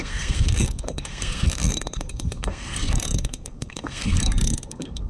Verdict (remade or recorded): remade